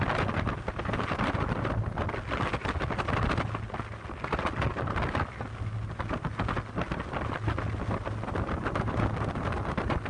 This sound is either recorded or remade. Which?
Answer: recorded